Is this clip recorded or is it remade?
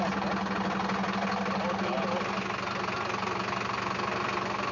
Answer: recorded